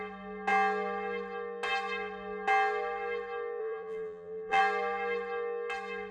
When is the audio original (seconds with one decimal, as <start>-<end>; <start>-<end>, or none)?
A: 0.0-3.6; 4.6-6.1